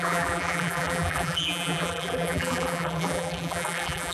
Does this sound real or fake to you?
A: fake